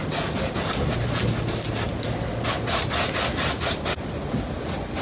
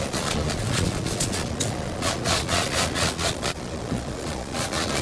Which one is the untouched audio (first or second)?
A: first